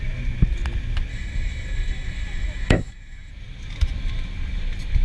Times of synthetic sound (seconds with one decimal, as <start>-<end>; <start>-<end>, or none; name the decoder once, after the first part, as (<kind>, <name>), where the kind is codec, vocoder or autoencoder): 1.1-3.3 (autoencoder, DAC-VAE)